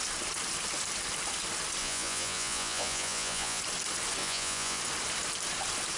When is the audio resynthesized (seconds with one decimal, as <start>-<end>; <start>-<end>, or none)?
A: 1.8-3.6; 4.2-4.8